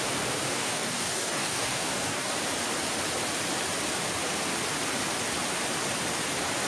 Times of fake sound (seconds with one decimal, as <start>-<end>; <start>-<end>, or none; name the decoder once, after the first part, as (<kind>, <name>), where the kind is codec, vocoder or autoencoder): 0.5-2.4 (codec, DAC)